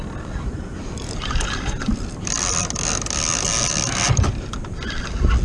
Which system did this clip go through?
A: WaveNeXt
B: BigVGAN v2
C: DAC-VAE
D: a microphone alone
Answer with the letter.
D